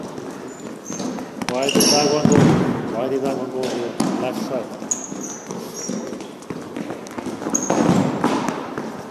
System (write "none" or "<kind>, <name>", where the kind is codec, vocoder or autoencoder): none